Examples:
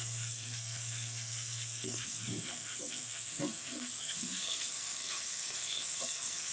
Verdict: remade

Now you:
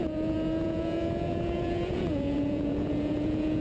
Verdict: remade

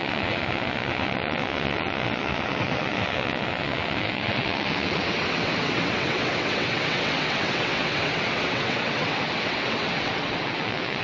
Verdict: remade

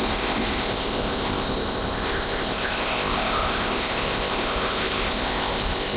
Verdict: remade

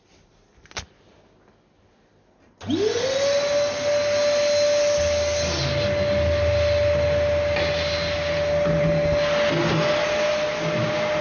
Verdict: recorded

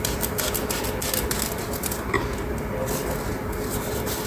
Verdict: recorded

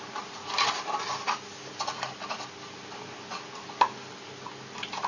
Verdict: recorded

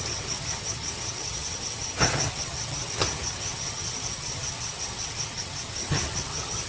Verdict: remade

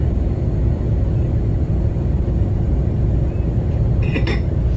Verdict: remade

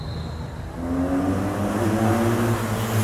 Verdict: recorded